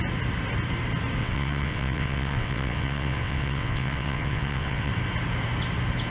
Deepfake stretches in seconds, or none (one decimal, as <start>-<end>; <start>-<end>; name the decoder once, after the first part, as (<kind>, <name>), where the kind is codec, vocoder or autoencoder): 1.2-4.9 (vocoder, WaveNeXt)